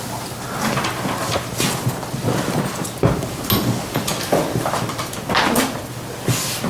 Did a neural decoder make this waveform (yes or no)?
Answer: no